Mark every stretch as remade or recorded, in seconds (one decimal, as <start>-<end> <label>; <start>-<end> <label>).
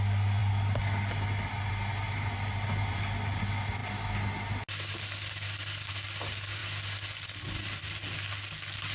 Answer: 0.0-8.9 recorded